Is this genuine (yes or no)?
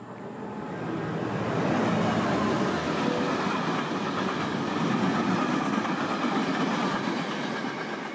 yes